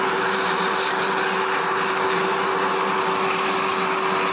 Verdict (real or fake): real